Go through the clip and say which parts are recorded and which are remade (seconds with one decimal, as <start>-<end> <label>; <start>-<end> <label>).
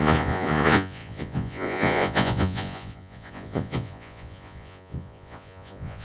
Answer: 0.0-6.0 remade